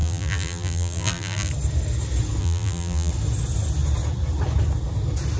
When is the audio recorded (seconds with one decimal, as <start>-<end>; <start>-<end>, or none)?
1.5-2.4; 3.1-5.4